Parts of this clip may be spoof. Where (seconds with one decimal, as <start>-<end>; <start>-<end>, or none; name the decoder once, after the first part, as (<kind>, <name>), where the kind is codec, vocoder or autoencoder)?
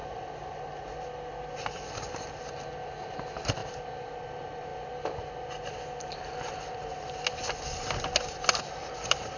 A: 0.0-1.0 (vocoder, BigVGAN v2)